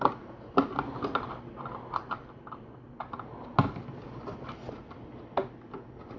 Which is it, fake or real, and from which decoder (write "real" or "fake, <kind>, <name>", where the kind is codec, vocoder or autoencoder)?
real